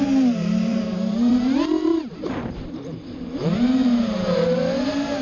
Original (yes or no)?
no